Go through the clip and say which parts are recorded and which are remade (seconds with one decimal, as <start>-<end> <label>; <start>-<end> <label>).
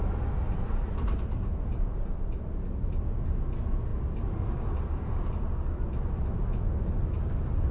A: 0.0-3.9 recorded; 3.9-5.1 remade; 5.1-7.7 recorded